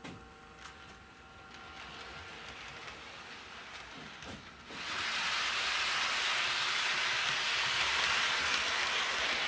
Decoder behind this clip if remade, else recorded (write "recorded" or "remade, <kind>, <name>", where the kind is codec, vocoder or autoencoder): recorded